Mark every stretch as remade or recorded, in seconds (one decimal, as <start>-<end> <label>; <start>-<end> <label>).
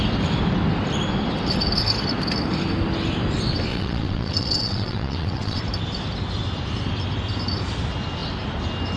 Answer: 0.0-3.7 recorded; 3.7-5.6 remade; 5.6-9.0 recorded